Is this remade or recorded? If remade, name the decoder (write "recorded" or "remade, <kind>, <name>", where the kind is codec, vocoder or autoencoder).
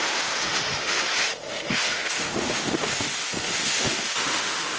remade, autoencoder, DAC-VAE